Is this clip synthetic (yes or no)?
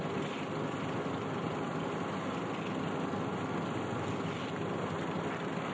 no